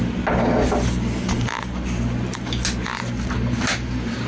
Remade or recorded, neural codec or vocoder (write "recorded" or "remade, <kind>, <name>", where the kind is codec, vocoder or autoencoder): recorded